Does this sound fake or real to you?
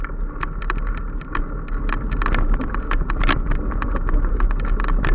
real